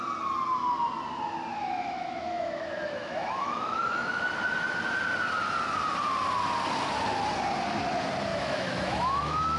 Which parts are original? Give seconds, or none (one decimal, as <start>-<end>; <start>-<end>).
0.0-1.5; 4.2-8.3